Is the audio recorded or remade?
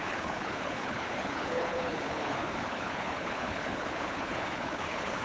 remade